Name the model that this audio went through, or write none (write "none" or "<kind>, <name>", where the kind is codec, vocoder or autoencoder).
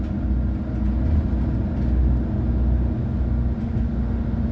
none